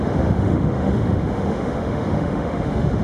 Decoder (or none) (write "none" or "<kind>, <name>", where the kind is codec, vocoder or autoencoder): autoencoder, DAC-VAE